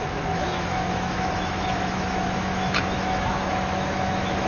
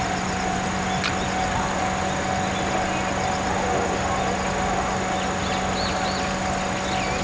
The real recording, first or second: second